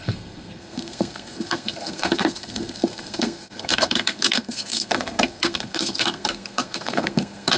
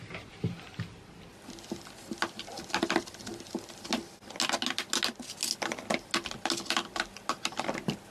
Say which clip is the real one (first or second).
second